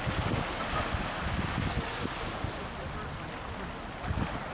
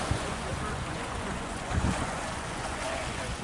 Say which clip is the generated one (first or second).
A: second